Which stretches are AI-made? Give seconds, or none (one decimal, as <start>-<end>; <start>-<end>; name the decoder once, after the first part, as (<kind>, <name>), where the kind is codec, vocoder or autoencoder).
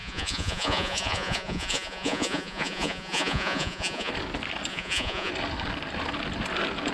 0.0-4.1 (vocoder, Vocos); 4.7-5.3